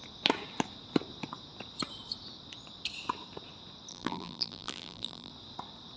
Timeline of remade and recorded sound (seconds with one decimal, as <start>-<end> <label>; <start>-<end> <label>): 0.0-3.9 recorded; 3.9-5.3 remade; 5.3-6.0 recorded